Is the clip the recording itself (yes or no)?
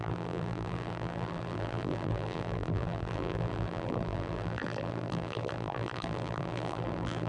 no